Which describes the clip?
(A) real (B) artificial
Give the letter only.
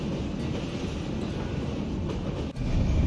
A